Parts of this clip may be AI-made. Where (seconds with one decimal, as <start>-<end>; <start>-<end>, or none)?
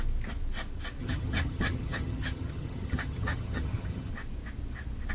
1.0-4.1